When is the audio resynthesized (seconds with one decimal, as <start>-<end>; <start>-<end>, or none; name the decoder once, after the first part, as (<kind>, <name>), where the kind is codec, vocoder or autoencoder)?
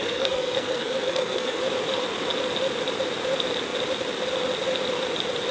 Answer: 0.0-1.6 (codec, SNAC)